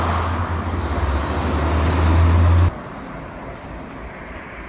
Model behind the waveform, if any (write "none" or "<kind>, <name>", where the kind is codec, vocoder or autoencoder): none